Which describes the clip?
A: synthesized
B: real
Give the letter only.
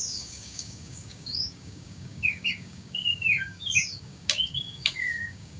A